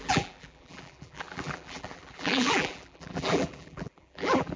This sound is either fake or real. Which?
fake